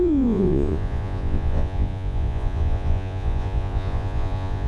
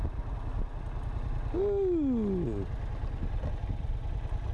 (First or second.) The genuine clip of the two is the second